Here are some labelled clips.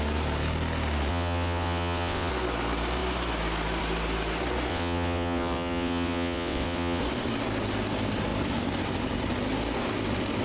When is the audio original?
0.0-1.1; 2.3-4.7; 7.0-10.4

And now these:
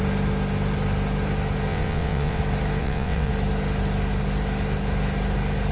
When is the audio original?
0.0-1.7; 2.4-2.8; 3.3-5.7

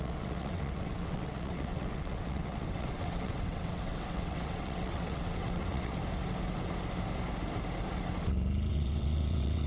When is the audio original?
6.0-8.7

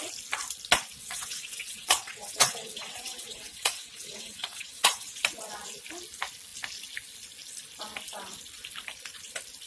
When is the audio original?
0.0-1.0; 5.2-9.7

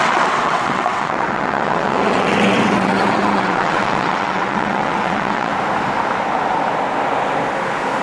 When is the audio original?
5.5-8.0

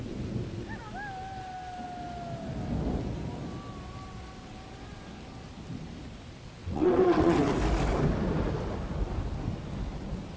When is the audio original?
0.0-6.6; 7.5-10.4

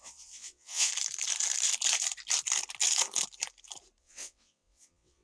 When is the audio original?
0.9-4.0

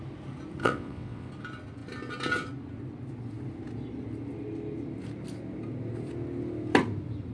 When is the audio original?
0.0-0.6; 1.3-7.3